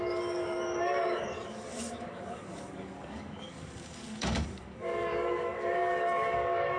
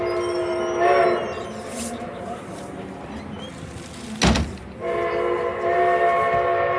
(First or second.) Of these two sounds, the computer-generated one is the first